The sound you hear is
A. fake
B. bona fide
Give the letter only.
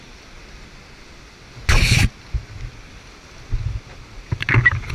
B